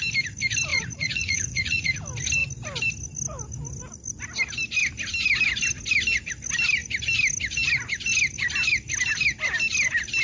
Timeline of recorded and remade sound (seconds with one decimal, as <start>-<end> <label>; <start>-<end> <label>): 0.0-0.7 recorded; 0.7-2.0 remade; 2.0-10.2 recorded